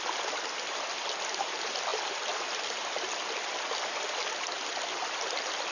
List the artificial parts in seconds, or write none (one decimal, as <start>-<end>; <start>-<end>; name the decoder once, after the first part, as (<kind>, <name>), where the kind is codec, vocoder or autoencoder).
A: none